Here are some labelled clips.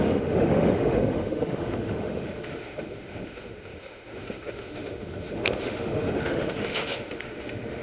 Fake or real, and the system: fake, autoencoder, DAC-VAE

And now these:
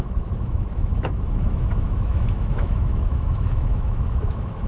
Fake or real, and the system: fake, autoencoder, DAC-VAE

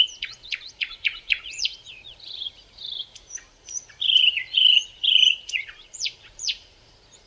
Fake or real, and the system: fake, vocoder, Vocos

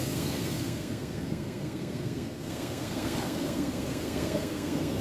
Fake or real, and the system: fake, codec, SNAC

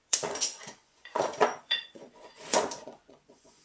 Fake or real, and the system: fake, vocoder, Vocos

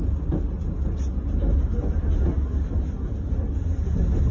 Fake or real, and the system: real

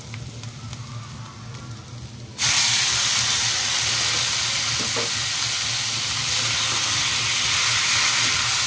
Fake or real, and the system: real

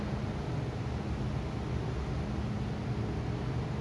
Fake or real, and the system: real